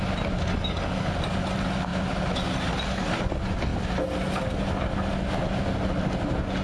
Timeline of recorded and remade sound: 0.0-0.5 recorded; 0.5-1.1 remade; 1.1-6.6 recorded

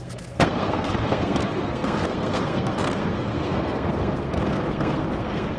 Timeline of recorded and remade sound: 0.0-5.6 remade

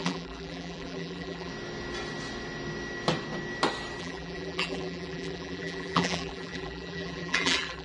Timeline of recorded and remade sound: 0.0-1.5 remade; 1.5-4.0 recorded; 4.0-7.8 remade